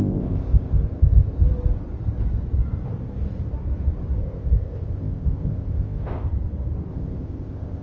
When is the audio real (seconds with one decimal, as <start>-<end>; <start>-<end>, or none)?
1.4-4.2; 6.3-6.9